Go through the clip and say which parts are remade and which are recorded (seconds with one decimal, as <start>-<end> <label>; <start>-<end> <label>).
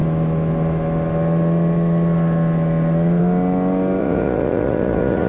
0.0-4.0 recorded; 4.0-5.3 remade